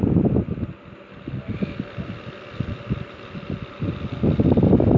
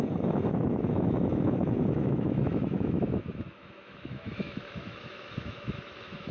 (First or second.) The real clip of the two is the first